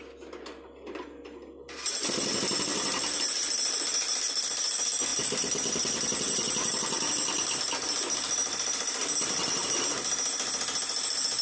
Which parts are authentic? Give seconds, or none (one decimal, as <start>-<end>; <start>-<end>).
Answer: 0.0-11.4